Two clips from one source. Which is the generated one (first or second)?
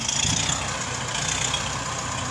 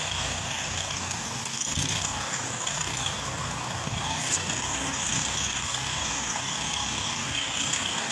second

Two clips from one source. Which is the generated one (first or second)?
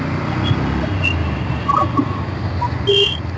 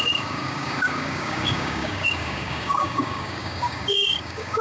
second